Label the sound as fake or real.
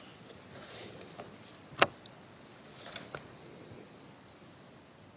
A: real